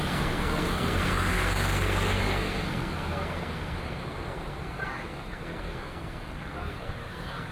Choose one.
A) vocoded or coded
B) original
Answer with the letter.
A